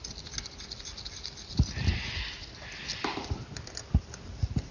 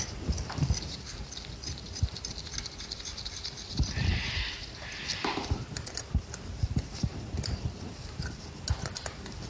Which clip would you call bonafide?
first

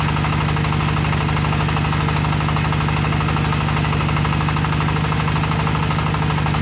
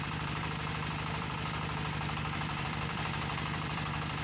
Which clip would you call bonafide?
first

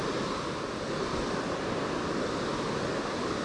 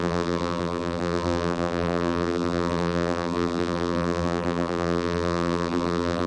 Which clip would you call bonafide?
first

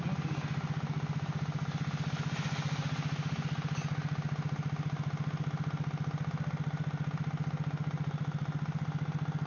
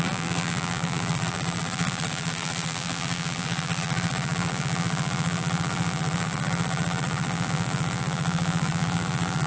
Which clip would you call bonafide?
first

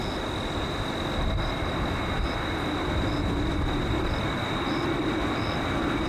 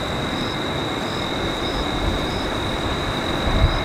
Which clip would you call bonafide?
first